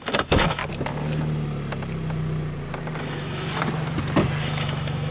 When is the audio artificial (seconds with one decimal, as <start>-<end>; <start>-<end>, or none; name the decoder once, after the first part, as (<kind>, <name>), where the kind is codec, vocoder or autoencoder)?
0.0-0.6 (autoencoder, DAC-VAE); 3.0-3.6; 4.4-5.1